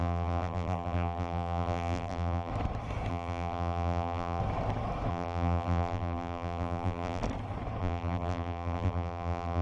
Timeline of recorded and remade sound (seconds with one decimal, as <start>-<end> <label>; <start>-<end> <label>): 0.0-2.5 remade; 2.5-3.1 recorded; 3.1-4.4 remade; 4.4-5.1 recorded; 5.1-7.2 remade; 7.2-7.8 recorded; 7.8-9.6 remade